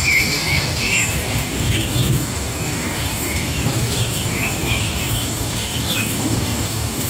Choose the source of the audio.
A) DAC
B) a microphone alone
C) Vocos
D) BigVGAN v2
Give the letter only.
A